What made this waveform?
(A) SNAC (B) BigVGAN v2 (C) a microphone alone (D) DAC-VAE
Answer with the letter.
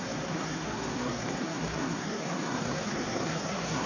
A